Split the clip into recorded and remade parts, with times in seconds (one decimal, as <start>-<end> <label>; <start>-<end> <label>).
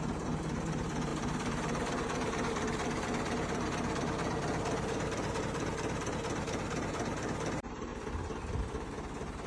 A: 0.0-7.9 remade; 7.9-8.6 recorded; 8.6-9.5 remade